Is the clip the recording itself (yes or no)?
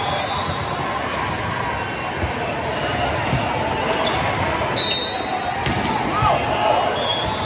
yes